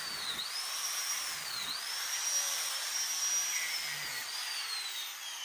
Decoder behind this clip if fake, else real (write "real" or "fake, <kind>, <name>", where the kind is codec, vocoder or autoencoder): real